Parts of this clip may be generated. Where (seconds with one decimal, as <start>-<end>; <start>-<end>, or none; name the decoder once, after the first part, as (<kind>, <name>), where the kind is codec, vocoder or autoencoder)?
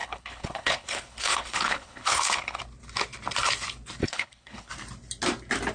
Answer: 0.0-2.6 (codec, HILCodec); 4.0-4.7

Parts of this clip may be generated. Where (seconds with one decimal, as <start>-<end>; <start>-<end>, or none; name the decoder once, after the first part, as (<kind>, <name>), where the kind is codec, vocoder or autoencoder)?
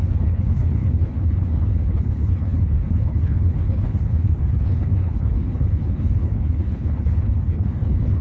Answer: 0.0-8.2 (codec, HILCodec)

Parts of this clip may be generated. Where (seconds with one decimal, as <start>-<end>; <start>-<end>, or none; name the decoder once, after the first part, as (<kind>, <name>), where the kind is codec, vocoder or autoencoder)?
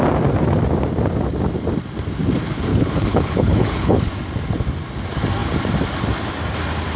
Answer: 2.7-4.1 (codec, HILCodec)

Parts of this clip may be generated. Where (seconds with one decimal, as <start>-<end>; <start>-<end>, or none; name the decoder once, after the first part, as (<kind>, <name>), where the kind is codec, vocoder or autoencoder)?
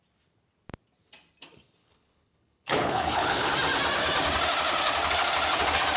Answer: 1.8-3.5 (codec, HILCodec)